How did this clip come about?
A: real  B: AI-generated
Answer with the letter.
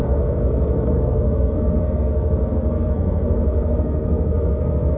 B